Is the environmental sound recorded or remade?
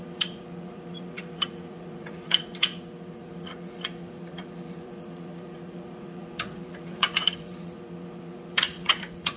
remade